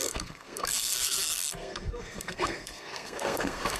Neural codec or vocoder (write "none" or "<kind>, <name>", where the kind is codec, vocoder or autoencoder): codec, SNAC